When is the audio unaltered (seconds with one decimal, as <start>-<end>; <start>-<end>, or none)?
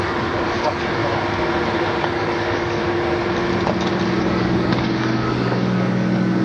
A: 1.0-1.9; 2.8-4.2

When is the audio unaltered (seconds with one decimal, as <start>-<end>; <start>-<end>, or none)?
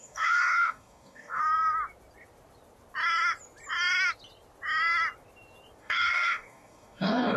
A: 1.4-5.8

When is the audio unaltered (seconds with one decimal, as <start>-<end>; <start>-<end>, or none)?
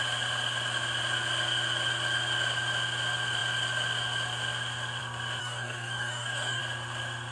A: 0.0-5.4; 6.6-7.3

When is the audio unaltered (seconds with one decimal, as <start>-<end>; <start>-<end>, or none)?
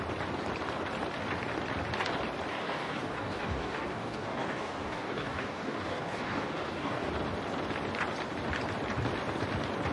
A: 0.0-2.5; 7.1-9.9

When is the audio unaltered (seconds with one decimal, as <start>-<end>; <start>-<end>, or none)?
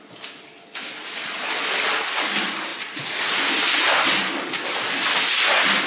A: 0.0-5.9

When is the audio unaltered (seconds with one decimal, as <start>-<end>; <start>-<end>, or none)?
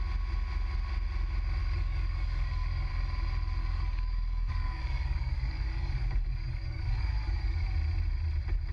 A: 0.0-1.6; 2.9-3.6; 7.7-8.7